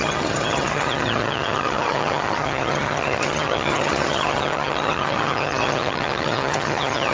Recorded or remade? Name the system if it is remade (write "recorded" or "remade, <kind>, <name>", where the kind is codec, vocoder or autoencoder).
remade, vocoder, HiFi-GAN